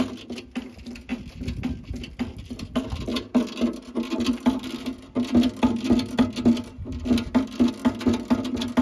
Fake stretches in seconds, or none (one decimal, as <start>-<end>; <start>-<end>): none